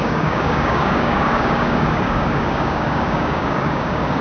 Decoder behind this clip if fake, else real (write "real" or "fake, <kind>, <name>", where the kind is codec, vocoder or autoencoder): fake, codec, DAC